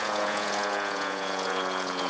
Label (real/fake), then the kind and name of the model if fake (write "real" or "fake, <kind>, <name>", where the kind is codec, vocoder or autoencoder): fake, vocoder, Vocos